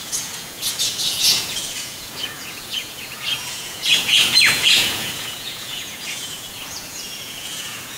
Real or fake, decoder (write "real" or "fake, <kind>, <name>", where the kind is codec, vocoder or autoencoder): fake, vocoder, Vocos